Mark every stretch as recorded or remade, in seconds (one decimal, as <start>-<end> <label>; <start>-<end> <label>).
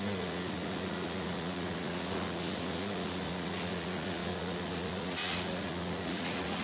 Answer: 0.0-6.6 remade